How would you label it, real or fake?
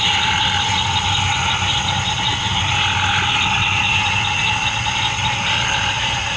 real